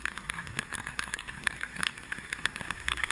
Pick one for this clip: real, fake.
fake